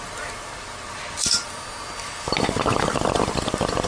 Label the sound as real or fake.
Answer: real